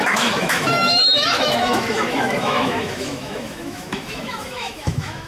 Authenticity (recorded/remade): remade